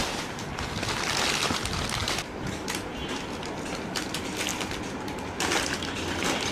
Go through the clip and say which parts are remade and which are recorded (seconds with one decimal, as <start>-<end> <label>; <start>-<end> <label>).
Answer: 0.0-6.5 recorded